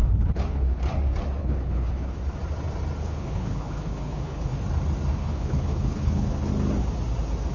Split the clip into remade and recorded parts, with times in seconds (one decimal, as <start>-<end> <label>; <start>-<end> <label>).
0.0-0.9 remade; 0.9-1.4 recorded; 1.4-2.2 remade; 2.2-3.0 recorded; 3.0-4.6 remade; 4.6-5.1 recorded; 5.1-6.5 remade; 6.5-7.5 recorded